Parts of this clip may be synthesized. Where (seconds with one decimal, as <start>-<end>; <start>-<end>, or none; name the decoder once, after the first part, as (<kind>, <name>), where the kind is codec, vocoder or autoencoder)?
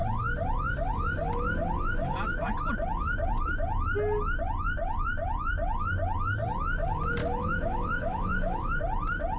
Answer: 7.2-8.8 (autoencoder, DAC-VAE)